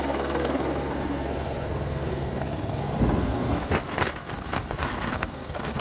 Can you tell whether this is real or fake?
fake